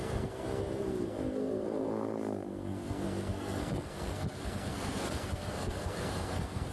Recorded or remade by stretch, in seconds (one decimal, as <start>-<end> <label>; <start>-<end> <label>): 0.0-6.7 remade